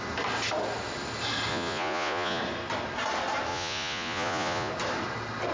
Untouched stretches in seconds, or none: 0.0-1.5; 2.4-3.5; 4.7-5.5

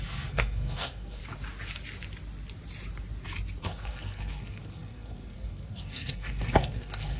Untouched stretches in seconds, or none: 1.2-3.6

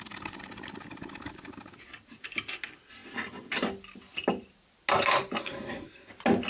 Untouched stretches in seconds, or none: 0.0-5.4; 6.1-6.5

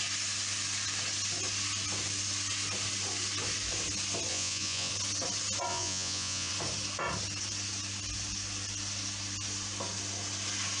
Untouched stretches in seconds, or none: 0.0-4.3; 4.9-5.7; 6.5-10.8

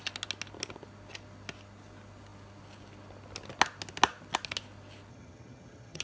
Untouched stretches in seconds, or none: 0.0-5.1

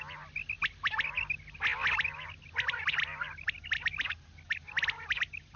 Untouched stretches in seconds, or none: 0.0-5.6